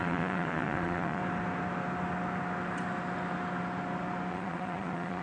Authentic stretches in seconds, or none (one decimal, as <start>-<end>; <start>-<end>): 1.2-4.3